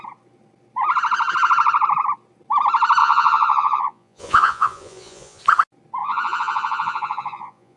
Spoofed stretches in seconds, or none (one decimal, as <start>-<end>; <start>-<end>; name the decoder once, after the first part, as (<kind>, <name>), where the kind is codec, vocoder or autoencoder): 3.0-5.4 (vocoder, Vocos); 6.0-7.8